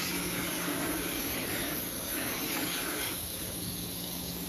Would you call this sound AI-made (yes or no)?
yes